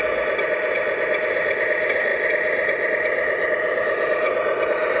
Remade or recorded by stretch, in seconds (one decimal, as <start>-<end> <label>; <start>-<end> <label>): 0.0-5.0 recorded

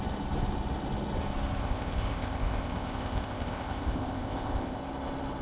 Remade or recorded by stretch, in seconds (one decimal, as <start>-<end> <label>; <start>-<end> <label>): 0.0-1.6 recorded; 1.6-4.8 remade; 4.8-5.4 recorded